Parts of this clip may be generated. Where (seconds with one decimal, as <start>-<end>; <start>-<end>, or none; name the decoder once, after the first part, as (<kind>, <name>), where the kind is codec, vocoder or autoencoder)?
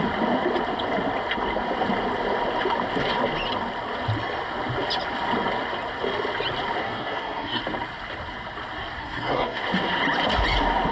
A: 6.8-7.6 (codec, SNAC); 9.0-9.6